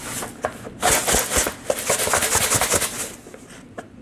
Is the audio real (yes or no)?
yes